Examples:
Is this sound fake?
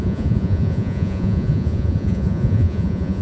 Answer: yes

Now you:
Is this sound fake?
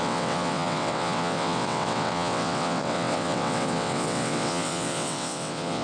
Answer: yes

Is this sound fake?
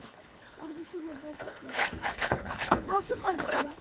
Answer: yes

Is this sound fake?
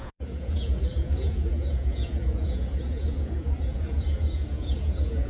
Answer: yes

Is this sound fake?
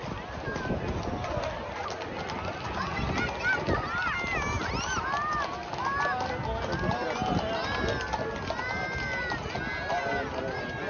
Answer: no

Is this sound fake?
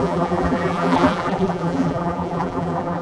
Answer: yes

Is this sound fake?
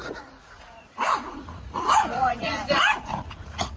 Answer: yes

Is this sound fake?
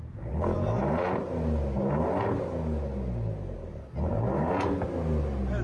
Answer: no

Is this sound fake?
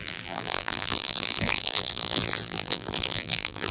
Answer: yes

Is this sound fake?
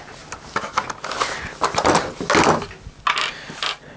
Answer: no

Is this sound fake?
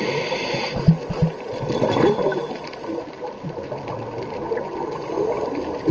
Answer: no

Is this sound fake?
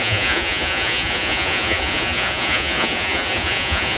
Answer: yes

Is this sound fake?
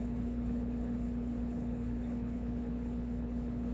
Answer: yes